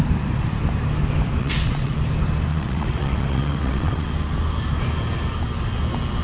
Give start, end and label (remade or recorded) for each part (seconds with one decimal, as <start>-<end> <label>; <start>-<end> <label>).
0.0-1.4 recorded; 1.4-2.0 remade; 2.0-2.5 recorded; 2.5-4.1 remade; 4.1-6.2 recorded